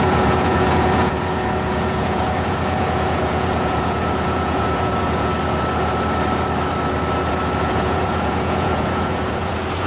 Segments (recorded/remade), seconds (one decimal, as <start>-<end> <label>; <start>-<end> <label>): 0.0-5.3 remade; 5.3-7.6 recorded; 7.6-9.9 remade